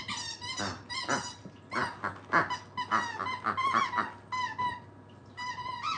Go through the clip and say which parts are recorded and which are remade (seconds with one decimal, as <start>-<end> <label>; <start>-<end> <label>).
0.0-6.0 recorded